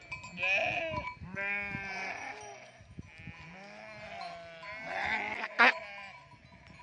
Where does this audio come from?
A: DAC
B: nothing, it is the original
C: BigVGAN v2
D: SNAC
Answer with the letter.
B